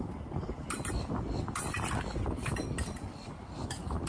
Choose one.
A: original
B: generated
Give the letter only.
A